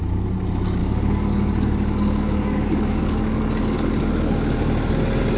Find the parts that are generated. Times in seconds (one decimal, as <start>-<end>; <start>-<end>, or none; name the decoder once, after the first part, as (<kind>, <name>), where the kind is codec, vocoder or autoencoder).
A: 0.8-4.0 (codec, DAC)